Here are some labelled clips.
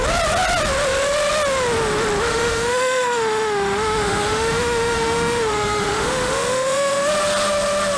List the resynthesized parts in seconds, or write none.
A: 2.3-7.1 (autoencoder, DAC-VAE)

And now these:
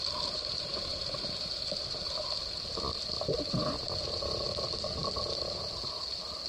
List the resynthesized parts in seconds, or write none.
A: 0.0-6.5 (vocoder, BigVGAN v2)

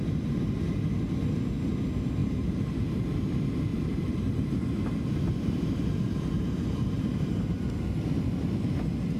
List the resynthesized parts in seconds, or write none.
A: 2.2-3.2 (vocoder, BigVGAN v2); 3.7-7.5

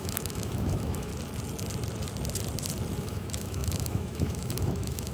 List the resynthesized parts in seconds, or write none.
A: 0.0-1.1 (autoencoder, DAC-VAE); 3.0-5.1

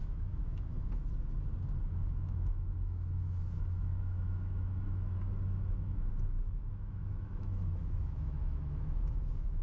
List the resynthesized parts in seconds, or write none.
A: 0.0-0.7 (autoencoder, DAC-VAE); 1.8-9.6